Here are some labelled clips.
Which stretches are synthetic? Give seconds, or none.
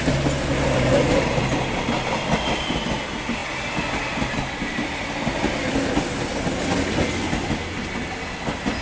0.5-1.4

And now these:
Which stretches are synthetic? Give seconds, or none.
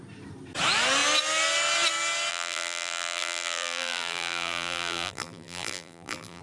2.3-6.4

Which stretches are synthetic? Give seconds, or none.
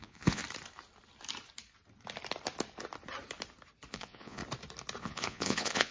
0.0-0.4; 3.9-4.4; 5.0-5.9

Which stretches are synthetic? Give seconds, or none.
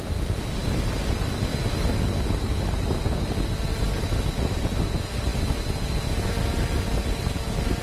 none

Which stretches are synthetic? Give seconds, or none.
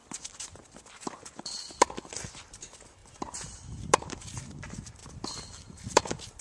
3.0-3.6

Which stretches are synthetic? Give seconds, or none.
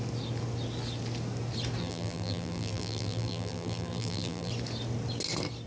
1.8-4.5